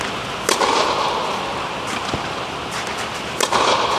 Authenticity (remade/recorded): recorded